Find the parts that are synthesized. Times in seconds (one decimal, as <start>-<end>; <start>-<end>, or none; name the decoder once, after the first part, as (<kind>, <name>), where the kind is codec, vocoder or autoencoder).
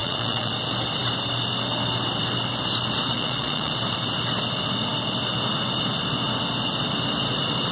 0.0-0.5 (vocoder, Vocos); 3.1-3.7